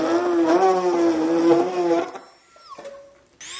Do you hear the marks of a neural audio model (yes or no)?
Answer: no